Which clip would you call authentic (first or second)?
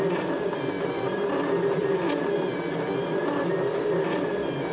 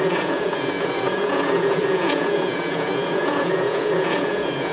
first